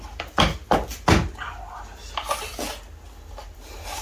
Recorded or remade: recorded